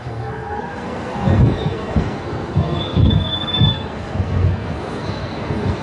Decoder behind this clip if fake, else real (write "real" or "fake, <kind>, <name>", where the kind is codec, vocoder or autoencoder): fake, codec, SNAC